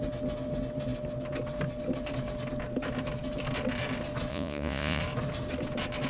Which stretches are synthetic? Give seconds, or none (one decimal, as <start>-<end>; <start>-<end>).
4.3-5.0